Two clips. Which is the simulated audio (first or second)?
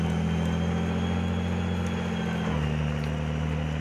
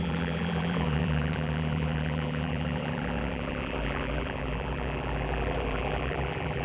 second